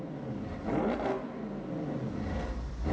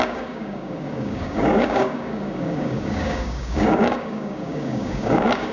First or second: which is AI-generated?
second